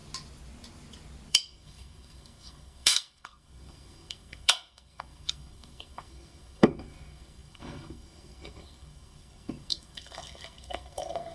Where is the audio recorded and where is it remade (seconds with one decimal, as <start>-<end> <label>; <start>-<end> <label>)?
0.0-1.3 recorded; 1.3-11.3 remade